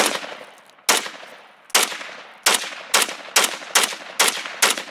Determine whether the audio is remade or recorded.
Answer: recorded